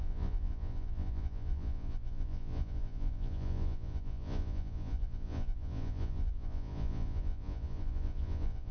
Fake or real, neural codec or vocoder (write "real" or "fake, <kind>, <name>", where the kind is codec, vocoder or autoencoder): fake, vocoder, Vocos